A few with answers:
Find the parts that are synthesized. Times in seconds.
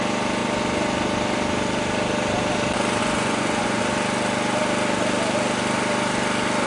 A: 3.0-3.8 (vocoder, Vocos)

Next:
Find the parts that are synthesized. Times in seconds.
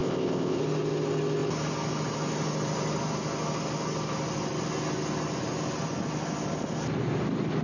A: 0.0-0.6 (codec, ZipCodec)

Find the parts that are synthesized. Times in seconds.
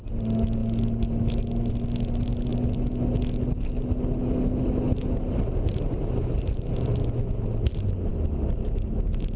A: none